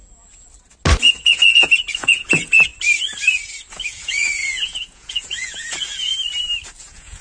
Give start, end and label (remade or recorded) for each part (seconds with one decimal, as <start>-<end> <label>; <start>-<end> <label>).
0.0-1.1 recorded; 1.1-2.7 remade; 2.7-3.7 recorded; 3.7-6.1 remade; 6.1-6.8 recorded; 6.8-7.2 remade